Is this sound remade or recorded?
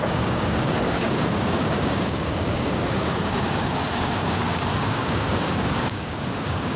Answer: remade